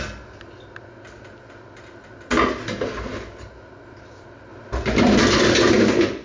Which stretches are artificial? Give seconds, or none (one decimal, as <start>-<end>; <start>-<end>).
none